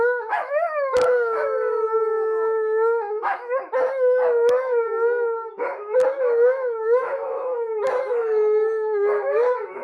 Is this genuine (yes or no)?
no